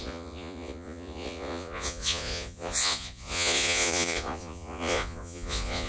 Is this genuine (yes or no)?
no